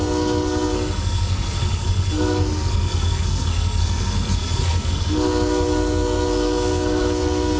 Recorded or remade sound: remade